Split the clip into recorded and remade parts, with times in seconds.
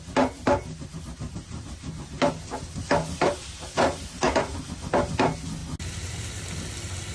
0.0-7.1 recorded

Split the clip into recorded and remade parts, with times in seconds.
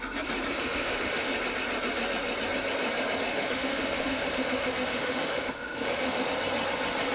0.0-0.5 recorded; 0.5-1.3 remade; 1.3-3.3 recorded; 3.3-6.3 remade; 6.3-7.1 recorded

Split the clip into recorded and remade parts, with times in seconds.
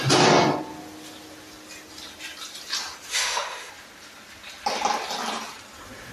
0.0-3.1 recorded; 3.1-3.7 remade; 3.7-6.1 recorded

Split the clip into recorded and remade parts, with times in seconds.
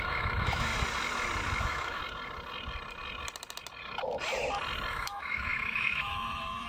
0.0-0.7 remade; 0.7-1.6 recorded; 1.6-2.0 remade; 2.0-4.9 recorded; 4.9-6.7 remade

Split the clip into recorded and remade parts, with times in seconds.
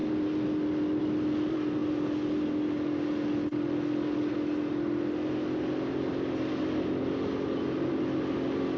0.0-8.8 recorded